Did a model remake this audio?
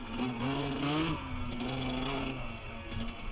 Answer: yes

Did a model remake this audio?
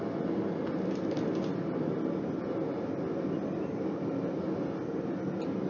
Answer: no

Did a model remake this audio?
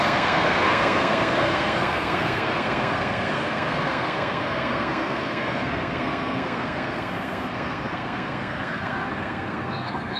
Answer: yes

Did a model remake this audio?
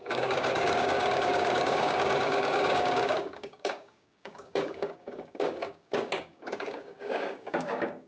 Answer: yes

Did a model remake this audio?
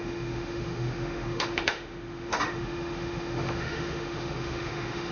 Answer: yes